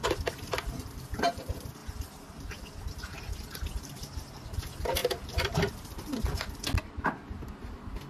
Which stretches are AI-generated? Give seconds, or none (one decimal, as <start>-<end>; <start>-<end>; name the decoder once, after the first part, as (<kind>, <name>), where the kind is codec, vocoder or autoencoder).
none